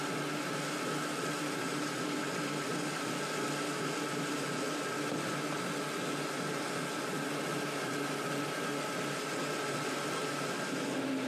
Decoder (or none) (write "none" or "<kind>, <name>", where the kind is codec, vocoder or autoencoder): none